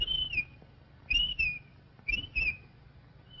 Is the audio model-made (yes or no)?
no